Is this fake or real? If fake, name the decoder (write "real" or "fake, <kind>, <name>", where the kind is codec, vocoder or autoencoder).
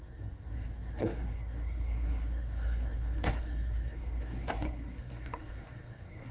fake, codec, SNAC